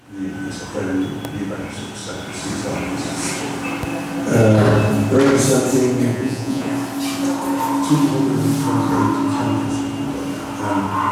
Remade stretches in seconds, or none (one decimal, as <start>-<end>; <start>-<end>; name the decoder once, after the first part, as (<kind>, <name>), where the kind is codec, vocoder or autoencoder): 6.1-6.7 (vocoder, Vocos)